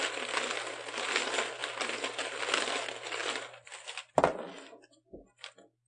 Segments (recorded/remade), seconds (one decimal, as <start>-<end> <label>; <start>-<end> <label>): 0.0-5.9 recorded